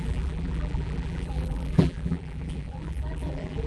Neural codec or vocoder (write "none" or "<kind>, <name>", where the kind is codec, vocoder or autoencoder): vocoder, BigVGAN v2